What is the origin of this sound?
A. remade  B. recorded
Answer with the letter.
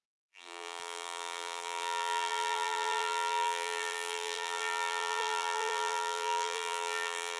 A